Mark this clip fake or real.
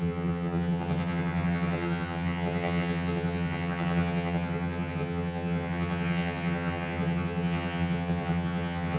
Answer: fake